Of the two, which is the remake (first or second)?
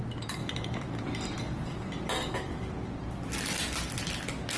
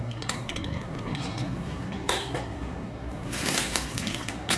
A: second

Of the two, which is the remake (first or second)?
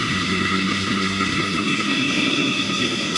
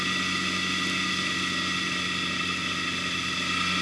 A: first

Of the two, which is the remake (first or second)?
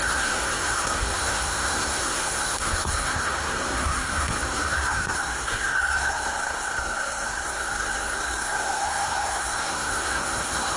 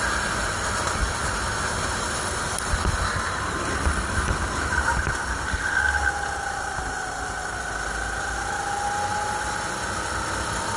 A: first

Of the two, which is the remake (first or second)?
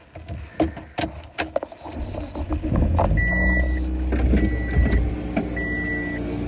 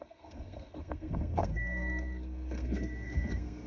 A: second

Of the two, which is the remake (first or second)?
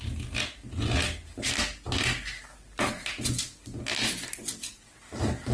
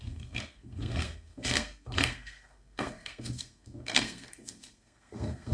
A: second